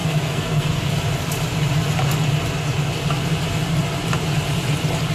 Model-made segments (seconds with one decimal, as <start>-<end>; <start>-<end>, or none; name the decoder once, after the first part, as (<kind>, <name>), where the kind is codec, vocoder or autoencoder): 0.0-0.9 (codec, SNAC)